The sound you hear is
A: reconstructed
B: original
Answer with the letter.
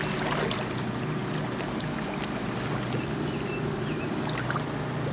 B